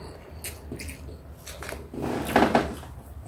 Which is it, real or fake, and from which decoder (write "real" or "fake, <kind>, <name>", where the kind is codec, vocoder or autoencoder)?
real